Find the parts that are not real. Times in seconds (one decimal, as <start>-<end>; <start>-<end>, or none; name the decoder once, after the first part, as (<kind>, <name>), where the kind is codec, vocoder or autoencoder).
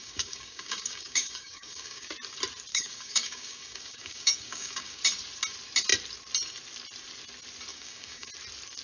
0.0-2.1 (codec, DAC); 2.7-5.0; 7.7-8.3